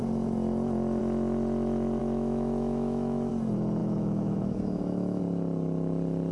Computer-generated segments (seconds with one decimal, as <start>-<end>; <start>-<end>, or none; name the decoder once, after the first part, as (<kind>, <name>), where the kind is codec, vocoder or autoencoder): 2.0-3.3 (autoencoder, DAC-VAE); 3.8-5.2